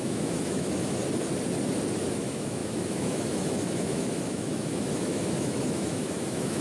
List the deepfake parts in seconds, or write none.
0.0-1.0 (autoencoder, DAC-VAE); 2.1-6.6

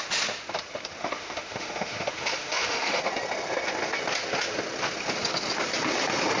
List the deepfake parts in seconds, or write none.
1.0-3.0 (autoencoder, DAC-VAE)

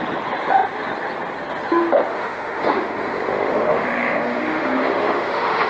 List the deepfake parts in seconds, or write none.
2.1-5.7 (autoencoder, DAC-VAE)

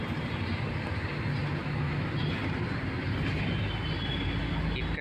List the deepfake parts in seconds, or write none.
1.6-2.1 (autoencoder, DAC-VAE)

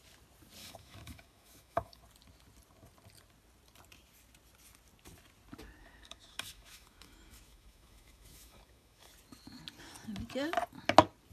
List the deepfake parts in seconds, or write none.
0.6-2.0 (autoencoder, DAC-VAE); 5.8-9.1

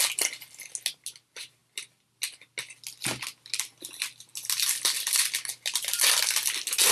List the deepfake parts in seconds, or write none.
none

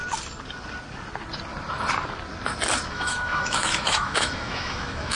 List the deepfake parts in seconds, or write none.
2.9-5.2 (autoencoder, DAC-VAE)

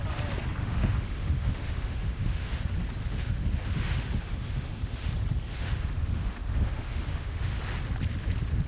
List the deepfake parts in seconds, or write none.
0.6-2.6 (autoencoder, DAC-VAE); 3.0-5.1; 5.5-7.6